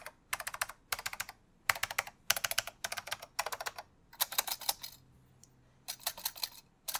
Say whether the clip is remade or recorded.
recorded